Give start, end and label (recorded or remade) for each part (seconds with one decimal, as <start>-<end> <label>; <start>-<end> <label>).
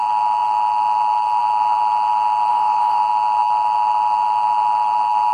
0.0-2.5 recorded; 2.5-3.0 remade; 3.0-5.3 recorded